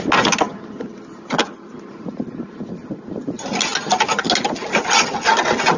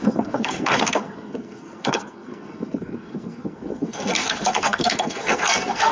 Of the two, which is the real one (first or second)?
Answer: first